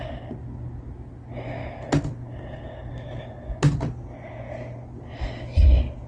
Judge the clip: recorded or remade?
recorded